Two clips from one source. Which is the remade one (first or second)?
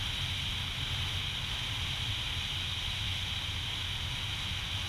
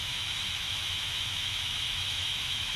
second